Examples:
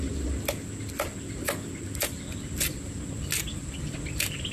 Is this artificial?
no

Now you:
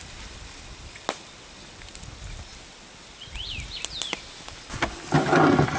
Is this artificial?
no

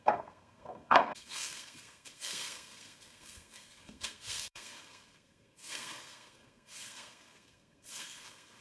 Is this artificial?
yes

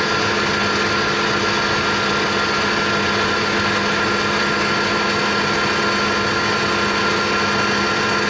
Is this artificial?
no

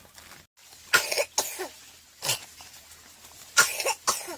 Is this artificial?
no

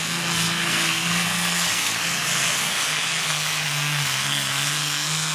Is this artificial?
yes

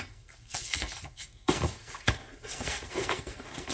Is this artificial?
yes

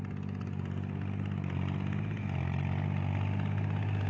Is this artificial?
no